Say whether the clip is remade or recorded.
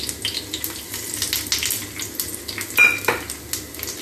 recorded